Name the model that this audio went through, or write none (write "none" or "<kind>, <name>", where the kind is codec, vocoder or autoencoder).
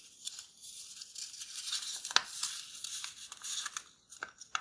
none